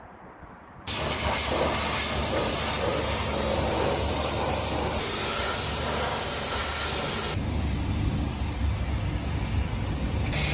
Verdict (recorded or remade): recorded